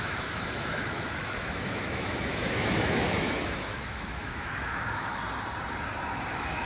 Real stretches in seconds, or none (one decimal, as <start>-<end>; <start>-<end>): 5.2-6.3